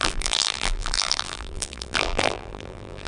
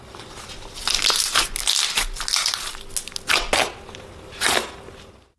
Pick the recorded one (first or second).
second